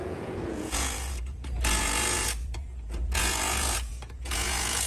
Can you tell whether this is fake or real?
fake